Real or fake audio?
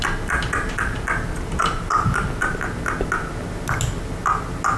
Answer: real